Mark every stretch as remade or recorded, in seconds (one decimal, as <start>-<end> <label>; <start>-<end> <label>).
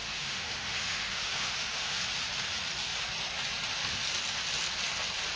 0.0-2.0 remade; 2.0-5.4 recorded